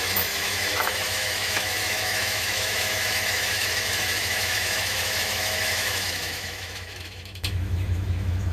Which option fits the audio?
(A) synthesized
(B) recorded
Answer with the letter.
A